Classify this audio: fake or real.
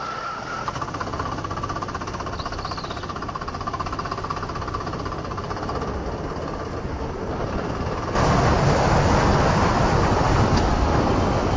real